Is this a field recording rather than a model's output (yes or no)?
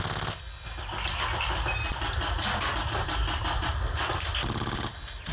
yes